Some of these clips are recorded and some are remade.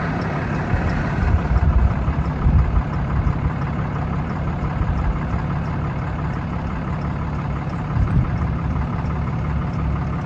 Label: remade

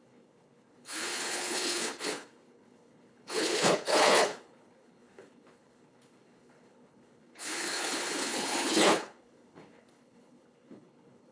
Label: remade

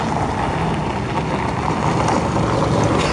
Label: recorded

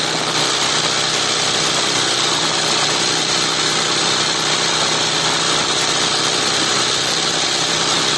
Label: remade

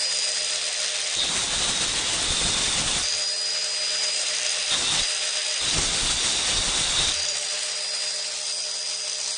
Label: recorded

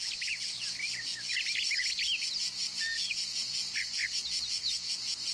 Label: recorded